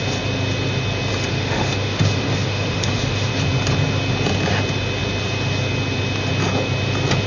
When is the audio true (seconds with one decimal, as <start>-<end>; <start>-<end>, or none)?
0.0-1.3; 3.3-7.3